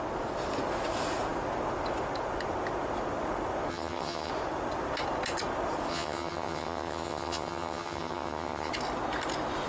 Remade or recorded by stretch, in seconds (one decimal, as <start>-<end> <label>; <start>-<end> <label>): 0.0-3.7 recorded; 3.7-4.3 remade; 4.3-5.9 recorded; 5.9-8.7 remade; 8.7-9.7 recorded